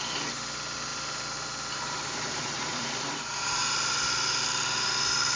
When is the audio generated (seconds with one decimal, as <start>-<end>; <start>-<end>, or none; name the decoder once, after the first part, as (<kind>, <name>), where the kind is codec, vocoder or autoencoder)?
0.9-3.6 (vocoder, BigVGAN v2)